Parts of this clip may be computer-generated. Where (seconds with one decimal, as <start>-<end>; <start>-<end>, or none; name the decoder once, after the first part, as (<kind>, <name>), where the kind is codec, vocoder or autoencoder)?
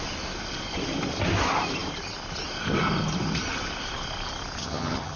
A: 4.6-5.2 (vocoder, HiFi-GAN)